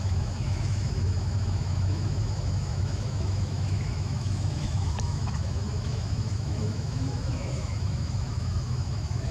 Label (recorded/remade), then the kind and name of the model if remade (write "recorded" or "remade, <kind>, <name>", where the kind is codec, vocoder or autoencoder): remade, autoencoder, DAC-VAE